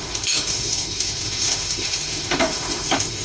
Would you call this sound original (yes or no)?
no